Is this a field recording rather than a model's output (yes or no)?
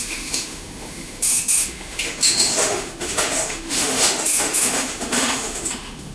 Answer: no